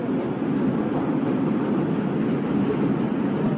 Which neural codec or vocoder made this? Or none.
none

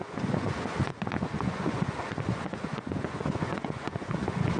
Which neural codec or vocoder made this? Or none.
vocoder, Vocos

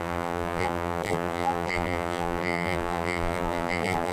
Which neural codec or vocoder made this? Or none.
vocoder, BigVGAN v2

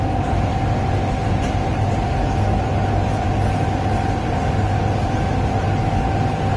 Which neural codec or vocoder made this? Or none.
none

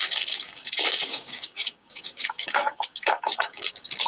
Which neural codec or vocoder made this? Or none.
codec, DAC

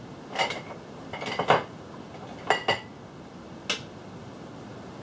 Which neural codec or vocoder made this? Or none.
none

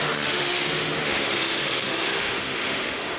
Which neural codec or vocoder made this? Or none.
autoencoder, DAC-VAE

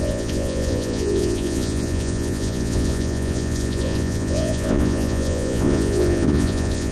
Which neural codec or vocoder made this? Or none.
vocoder, Vocos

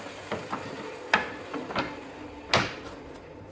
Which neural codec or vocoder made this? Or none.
none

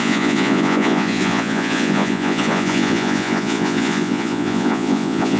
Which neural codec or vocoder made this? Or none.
vocoder, Vocos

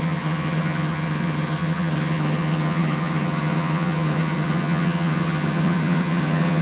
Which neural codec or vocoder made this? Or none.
vocoder, HiFi-GAN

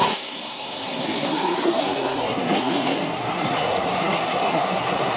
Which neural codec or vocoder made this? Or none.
codec, SNAC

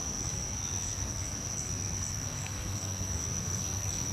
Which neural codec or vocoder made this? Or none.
codec, SNAC